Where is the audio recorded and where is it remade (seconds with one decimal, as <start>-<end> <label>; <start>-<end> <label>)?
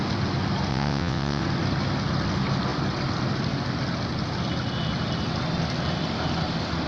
0.0-0.7 recorded; 0.7-1.4 remade; 1.4-6.9 recorded